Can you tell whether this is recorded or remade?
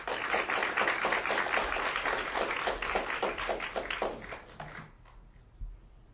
recorded